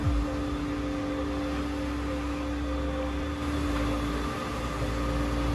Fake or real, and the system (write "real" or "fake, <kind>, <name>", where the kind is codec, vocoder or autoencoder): real